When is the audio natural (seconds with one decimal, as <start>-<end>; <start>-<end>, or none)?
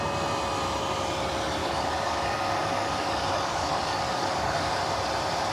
0.0-1.6; 4.8-5.5